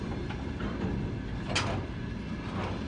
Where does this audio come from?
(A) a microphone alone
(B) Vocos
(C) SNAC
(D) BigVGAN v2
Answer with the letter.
A